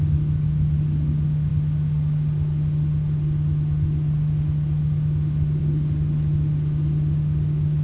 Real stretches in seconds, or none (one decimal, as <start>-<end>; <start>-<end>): 0.0-7.8